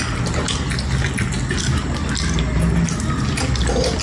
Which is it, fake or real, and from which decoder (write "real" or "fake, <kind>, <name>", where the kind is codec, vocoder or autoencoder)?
real